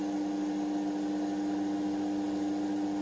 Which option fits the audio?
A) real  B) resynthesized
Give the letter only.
A